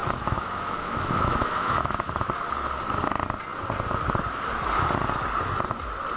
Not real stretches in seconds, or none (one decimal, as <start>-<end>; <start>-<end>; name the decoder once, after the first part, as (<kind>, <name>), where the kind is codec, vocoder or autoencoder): 0.0-2.1 (autoencoder, DAC-VAE)